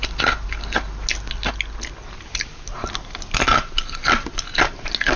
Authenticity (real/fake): real